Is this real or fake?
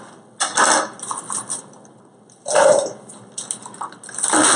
real